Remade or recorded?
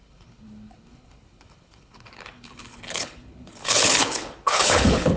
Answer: remade